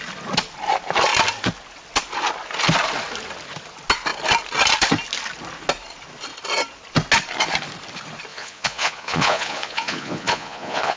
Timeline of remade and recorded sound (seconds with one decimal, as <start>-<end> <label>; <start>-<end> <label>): 0.0-8.3 recorded; 8.3-11.0 remade